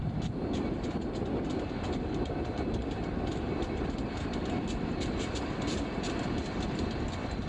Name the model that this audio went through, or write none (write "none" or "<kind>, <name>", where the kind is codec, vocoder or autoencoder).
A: none